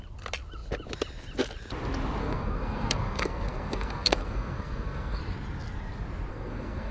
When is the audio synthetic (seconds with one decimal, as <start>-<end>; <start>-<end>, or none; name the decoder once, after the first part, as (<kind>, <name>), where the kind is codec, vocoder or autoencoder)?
2.2-5.2 (codec, SNAC); 6.3-6.9